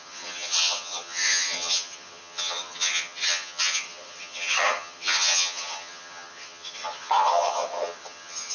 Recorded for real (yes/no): no